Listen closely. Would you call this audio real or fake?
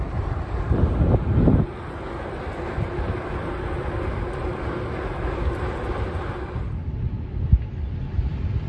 real